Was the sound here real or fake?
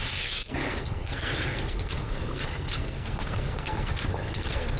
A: fake